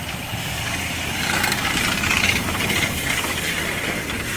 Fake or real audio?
fake